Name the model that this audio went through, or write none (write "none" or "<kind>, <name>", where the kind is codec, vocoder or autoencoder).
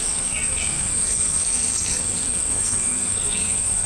codec, SNAC